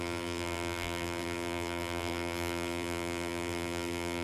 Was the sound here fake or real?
fake